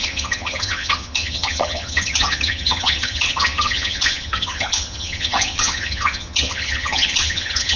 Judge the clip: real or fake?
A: fake